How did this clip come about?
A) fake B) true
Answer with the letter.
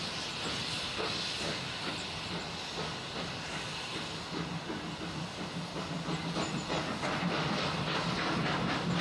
B